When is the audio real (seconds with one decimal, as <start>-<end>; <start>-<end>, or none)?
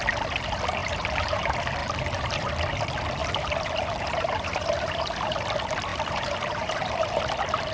0.0-0.8; 1.4-1.8; 2.5-3.2; 5.5-5.9; 7.2-7.7